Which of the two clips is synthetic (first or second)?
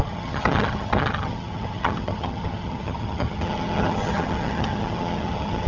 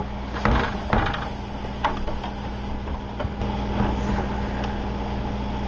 first